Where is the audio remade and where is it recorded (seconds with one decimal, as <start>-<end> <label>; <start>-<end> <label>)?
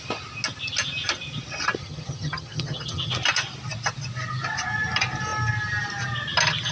0.0-1.8 recorded; 1.8-3.1 remade; 3.1-6.7 recorded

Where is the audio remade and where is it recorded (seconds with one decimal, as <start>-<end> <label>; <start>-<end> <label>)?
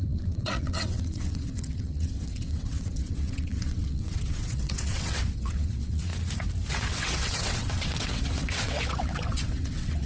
0.0-6.1 remade; 6.1-6.7 recorded; 6.7-10.1 remade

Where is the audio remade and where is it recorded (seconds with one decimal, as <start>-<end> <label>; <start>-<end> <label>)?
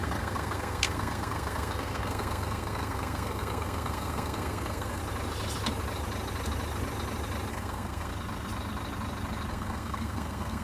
0.0-5.0 remade; 5.0-7.5 recorded; 7.5-8.1 remade; 8.1-9.5 recorded; 9.5-10.6 remade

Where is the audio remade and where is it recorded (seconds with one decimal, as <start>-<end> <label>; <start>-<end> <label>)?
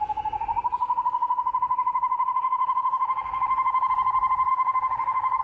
0.0-0.8 recorded; 0.8-3.9 remade; 3.9-4.5 recorded; 4.5-5.4 remade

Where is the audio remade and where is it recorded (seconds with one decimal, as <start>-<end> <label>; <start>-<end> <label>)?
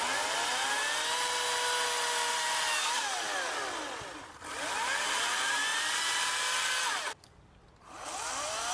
0.0-8.7 recorded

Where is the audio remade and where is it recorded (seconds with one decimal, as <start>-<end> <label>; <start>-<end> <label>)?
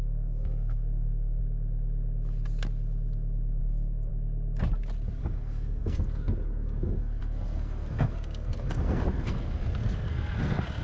0.0-1.4 remade; 1.4-3.6 recorded; 3.6-4.1 remade; 4.1-5.2 recorded; 5.2-10.8 remade